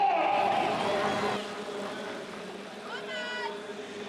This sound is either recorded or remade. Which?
recorded